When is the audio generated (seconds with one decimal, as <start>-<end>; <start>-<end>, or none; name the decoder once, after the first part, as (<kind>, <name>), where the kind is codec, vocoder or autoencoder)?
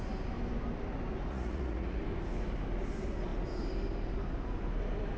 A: 1.3-2.0 (vocoder, Vocos)